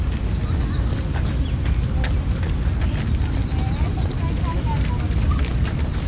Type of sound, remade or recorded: recorded